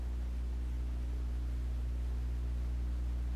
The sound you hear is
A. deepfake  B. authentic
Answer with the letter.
B